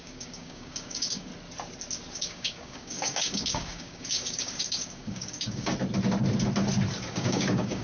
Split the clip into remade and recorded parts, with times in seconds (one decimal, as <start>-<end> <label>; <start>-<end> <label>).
0.0-1.3 remade; 1.3-2.1 recorded; 2.1-5.7 remade; 5.7-7.1 recorded; 7.1-7.8 remade

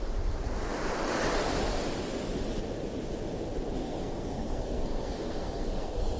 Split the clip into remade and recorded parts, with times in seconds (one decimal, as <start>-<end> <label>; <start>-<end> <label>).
0.0-3.8 recorded; 3.8-6.2 remade

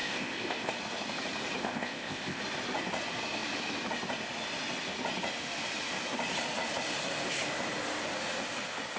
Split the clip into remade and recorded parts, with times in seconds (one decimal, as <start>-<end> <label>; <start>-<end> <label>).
0.0-0.7 remade; 0.7-1.6 recorded; 1.6-2.4 remade; 2.4-9.0 recorded

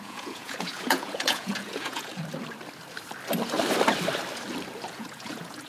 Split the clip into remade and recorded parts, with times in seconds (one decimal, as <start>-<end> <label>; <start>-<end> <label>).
0.0-2.1 remade; 2.1-4.9 recorded; 4.9-5.7 remade

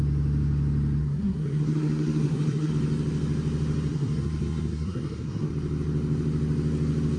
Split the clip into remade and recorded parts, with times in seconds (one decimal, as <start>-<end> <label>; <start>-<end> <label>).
0.0-1.0 recorded; 1.0-2.7 remade; 2.7-3.9 recorded; 3.9-5.5 remade; 5.5-7.2 recorded

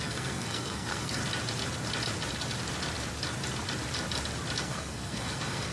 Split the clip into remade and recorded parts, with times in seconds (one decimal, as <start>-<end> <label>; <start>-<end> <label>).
0.0-1.2 remade; 1.2-4.6 recorded; 4.6-5.7 remade